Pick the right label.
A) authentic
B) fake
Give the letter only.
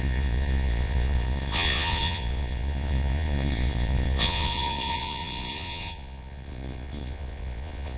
B